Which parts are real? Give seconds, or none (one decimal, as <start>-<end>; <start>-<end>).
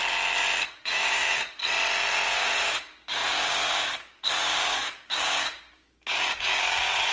0.0-0.8; 1.6-2.3